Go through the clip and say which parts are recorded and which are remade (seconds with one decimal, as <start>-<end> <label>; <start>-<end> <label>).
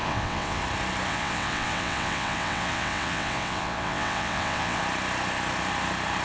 0.0-0.6 remade; 0.6-1.1 recorded; 1.1-4.8 remade; 4.8-6.2 recorded